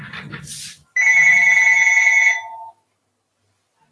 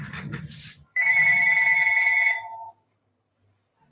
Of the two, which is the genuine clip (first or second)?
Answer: first